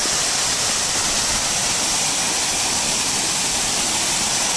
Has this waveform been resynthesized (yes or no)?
no